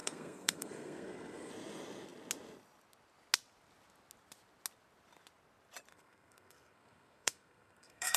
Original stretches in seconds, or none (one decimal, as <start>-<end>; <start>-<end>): 1.5-5.9